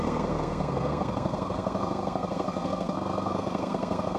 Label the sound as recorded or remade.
remade